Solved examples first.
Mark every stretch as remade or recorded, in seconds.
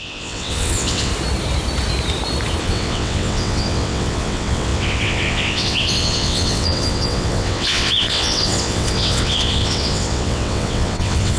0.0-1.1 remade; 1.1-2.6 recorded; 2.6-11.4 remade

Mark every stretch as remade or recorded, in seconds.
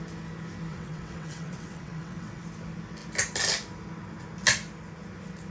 0.0-0.7 recorded; 0.7-2.4 remade; 2.4-5.5 recorded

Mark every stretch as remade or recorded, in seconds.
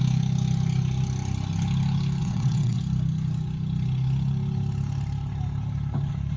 0.0-2.2 recorded; 2.2-2.8 remade; 2.8-6.4 recorded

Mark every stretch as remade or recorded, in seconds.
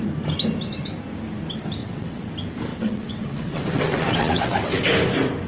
0.0-1.8 recorded; 1.8-2.3 remade; 2.3-2.7 recorded; 2.7-4.8 remade; 4.8-5.5 recorded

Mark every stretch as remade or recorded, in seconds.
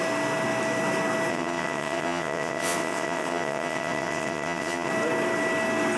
0.0-1.3 recorded; 1.3-4.9 remade; 4.9-6.0 recorded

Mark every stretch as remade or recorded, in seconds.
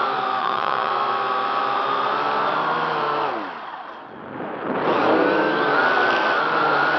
0.0-0.4 recorded; 0.4-0.9 remade; 0.9-7.0 recorded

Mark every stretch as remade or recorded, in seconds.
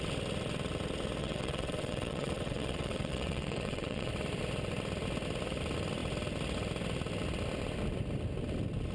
0.0-1.2 recorded; 1.2-4.1 remade; 4.1-8.9 recorded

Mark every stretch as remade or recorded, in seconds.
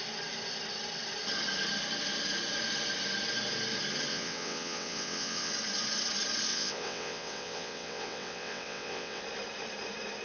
0.0-4.1 recorded; 4.1-5.5 remade; 5.5-6.5 recorded; 6.5-9.2 remade; 9.2-10.2 recorded